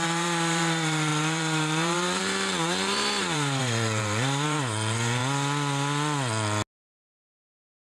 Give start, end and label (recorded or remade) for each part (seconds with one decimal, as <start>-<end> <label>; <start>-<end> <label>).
0.0-5.2 remade; 5.2-7.4 recorded; 7.4-7.9 remade

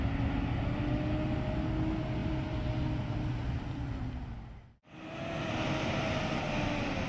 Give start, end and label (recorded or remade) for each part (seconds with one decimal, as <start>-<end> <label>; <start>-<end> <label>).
0.0-2.2 recorded; 2.2-4.4 remade; 4.4-7.1 recorded

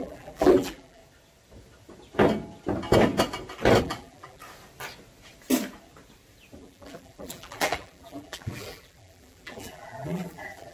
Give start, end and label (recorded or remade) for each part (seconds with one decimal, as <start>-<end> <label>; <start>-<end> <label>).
0.0-1.0 remade; 1.0-3.8 recorded; 3.8-4.4 remade; 4.4-6.6 recorded; 6.6-10.7 remade

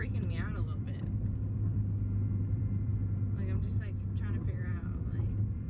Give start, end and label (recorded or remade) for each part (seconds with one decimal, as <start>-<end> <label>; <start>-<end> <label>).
0.0-1.7 remade; 1.7-2.4 recorded; 2.4-2.9 remade; 2.9-4.4 recorded; 4.4-5.7 remade

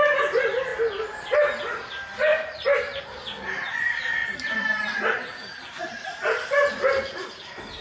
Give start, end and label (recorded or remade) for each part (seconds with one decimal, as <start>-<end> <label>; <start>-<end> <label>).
0.0-2.3 recorded; 2.3-3.0 remade; 3.0-4.2 recorded; 4.2-6.2 remade; 6.2-7.8 recorded

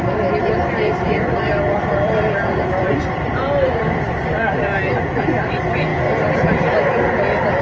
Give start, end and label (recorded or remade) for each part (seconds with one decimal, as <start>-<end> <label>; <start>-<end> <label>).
0.0-0.4 recorded; 0.4-4.5 remade; 4.5-5.9 recorded; 5.9-6.5 remade; 6.5-7.6 recorded

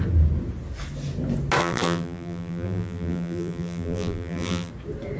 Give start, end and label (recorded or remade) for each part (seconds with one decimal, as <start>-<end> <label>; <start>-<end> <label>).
0.0-1.6 recorded; 1.6-4.7 remade; 4.7-5.2 recorded